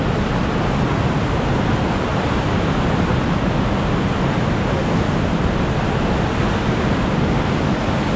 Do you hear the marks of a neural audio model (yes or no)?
no